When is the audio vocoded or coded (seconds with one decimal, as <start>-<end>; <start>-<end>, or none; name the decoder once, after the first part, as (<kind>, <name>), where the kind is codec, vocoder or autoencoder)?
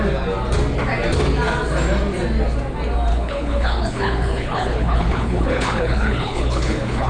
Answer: 3.1-7.1 (codec, HILCodec)